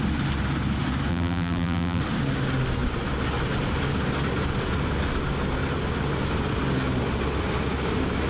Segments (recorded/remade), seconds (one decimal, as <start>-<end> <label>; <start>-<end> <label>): 0.0-1.1 recorded; 1.1-2.0 remade; 2.0-8.3 recorded